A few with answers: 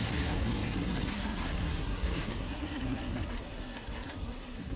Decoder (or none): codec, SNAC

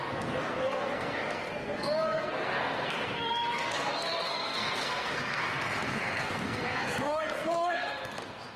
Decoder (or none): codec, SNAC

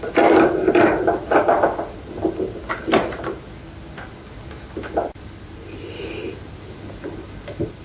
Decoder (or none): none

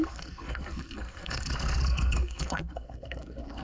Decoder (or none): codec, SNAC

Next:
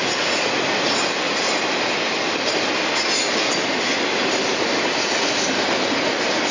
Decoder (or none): none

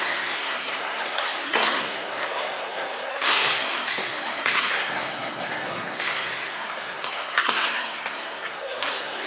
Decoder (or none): codec, SNAC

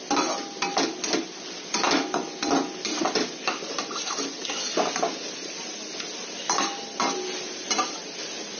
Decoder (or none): none